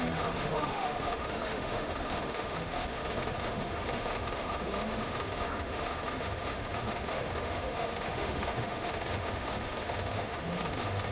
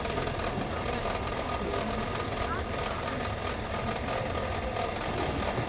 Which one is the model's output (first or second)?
first